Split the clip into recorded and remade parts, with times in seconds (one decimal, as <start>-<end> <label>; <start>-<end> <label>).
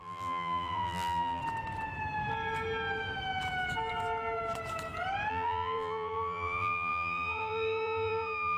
0.0-1.4 remade; 1.4-5.3 recorded; 5.3-8.6 remade